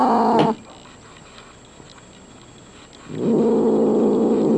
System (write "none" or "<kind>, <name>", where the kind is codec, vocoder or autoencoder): none